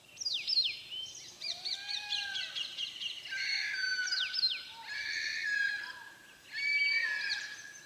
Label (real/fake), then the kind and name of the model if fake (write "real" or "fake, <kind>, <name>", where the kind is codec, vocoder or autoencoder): real